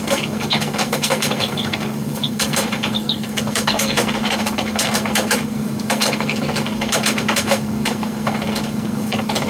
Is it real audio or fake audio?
fake